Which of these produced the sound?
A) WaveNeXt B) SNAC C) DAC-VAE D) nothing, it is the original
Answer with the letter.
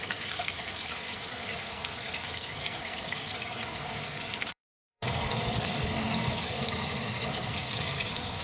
B